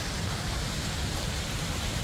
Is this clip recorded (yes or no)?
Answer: no